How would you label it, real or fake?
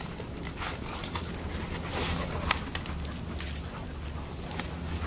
real